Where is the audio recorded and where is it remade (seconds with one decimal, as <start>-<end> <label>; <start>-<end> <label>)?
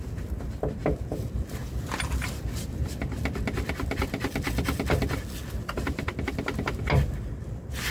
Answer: 0.0-7.9 recorded